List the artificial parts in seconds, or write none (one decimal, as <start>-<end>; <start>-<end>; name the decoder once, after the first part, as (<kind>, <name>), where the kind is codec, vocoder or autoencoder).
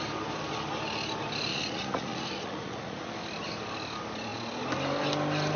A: 1.5-3.1 (vocoder, Vocos)